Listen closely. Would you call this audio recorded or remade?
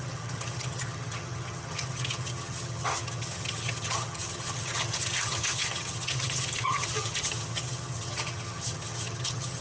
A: remade